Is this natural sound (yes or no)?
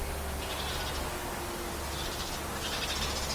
yes